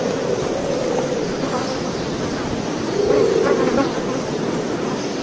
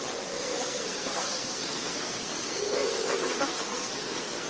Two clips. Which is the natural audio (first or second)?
first